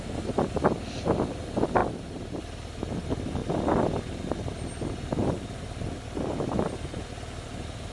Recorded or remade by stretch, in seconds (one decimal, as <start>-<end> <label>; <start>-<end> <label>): 0.0-7.9 recorded